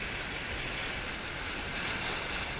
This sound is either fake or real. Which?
real